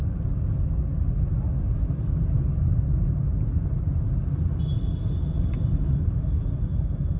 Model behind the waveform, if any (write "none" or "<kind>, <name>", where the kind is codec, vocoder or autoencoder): none